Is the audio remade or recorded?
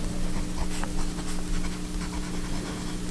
recorded